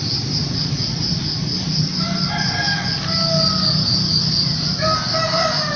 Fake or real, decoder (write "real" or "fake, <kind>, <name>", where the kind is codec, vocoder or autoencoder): real